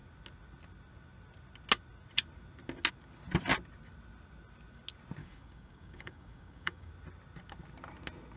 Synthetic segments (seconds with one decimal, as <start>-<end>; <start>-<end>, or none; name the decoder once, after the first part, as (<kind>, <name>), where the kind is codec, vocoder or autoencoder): 5.2-6.9 (codec, DAC)